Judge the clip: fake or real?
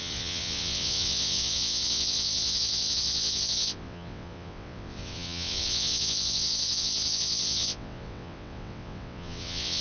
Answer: fake